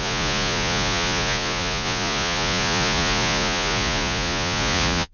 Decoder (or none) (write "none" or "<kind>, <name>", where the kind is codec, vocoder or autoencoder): vocoder, Vocos